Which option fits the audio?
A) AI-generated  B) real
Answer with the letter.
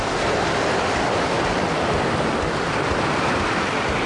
A